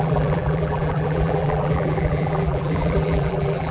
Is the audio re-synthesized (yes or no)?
yes